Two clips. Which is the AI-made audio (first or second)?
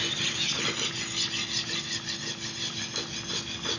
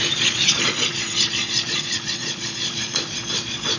second